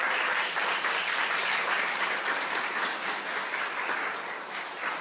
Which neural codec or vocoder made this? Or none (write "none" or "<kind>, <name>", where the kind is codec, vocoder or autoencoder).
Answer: none